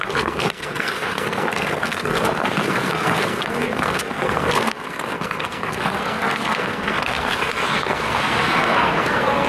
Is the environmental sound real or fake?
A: fake